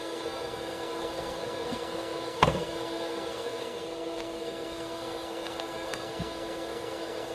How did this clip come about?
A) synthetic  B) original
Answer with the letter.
A